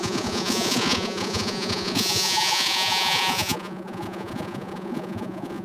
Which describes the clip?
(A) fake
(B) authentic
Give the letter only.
A